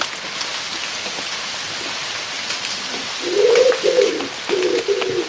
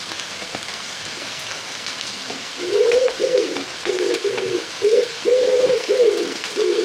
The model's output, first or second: second